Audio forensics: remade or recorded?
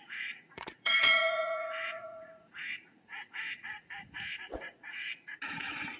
remade